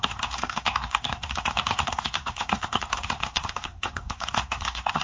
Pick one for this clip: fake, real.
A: fake